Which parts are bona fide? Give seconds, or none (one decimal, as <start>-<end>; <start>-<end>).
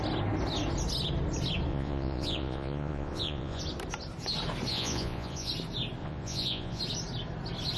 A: 0.0-1.7; 3.6-4.7; 5.5-6.0; 6.8-7.8